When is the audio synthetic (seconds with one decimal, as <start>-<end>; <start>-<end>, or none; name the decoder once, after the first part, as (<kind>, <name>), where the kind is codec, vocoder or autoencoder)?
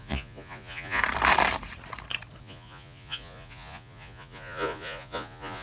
0.0-1.0 (vocoder, Vocos); 2.4-5.6